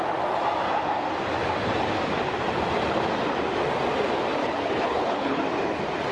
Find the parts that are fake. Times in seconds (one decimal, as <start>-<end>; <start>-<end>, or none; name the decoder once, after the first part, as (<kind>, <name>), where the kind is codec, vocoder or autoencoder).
4.4-5.4 (codec, HILCodec)